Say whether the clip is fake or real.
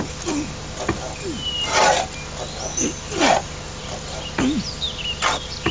real